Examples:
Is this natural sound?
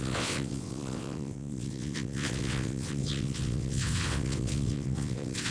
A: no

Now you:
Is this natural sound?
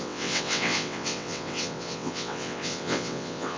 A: no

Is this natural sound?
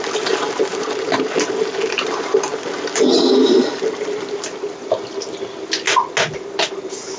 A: yes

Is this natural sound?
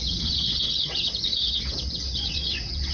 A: no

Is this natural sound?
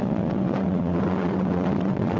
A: no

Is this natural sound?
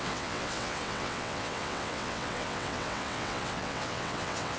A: no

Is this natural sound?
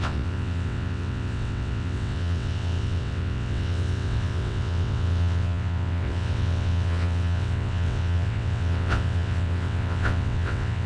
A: no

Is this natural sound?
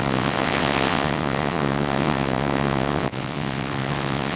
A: no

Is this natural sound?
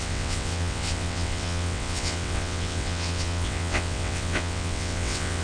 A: no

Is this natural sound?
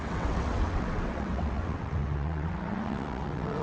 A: no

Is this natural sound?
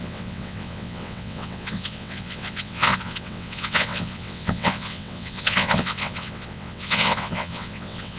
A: no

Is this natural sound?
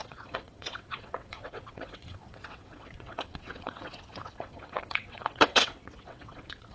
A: no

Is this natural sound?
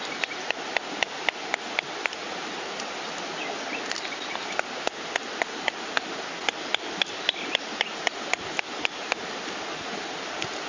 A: yes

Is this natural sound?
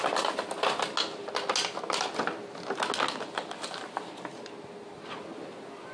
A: yes